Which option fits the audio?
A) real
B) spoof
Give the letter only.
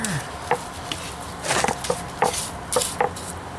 A